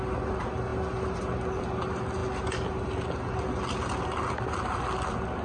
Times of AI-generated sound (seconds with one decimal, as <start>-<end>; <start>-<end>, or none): none